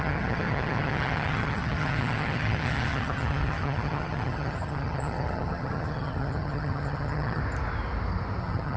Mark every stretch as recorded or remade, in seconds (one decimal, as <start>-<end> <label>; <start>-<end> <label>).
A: 0.0-7.4 remade; 7.4-8.4 recorded; 8.4-8.8 remade